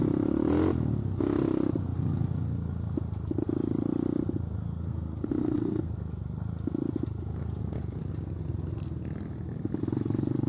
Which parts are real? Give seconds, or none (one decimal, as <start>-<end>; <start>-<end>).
0.0-4.6; 5.9-10.5